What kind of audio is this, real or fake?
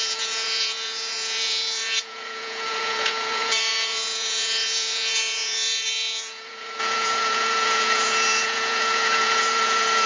fake